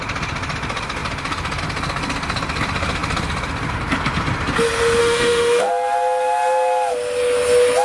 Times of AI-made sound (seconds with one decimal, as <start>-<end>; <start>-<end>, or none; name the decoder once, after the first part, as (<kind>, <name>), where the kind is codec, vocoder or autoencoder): 5.0-5.7 (autoencoder, DAC-VAE)